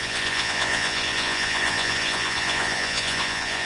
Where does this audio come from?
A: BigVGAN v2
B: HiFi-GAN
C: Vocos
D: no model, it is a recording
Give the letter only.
C